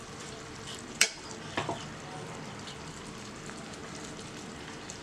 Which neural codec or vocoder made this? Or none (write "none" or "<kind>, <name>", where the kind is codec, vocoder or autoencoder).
vocoder, BigVGAN v2